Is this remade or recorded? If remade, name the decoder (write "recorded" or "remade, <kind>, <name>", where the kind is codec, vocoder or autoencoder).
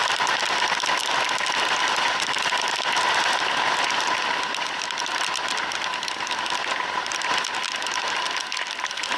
recorded